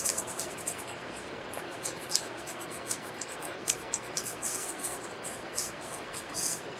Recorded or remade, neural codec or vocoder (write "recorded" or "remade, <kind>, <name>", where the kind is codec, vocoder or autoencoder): remade, codec, SNAC